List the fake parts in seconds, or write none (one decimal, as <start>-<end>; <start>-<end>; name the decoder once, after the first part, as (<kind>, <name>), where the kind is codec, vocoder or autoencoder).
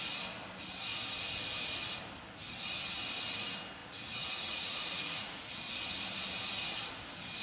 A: 3.8-5.4 (vocoder, Vocos)